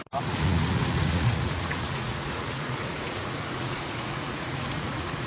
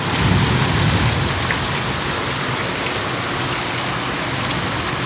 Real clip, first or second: second